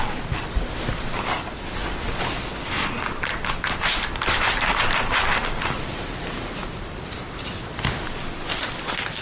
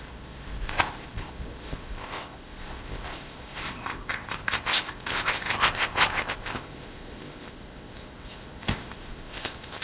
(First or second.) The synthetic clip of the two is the second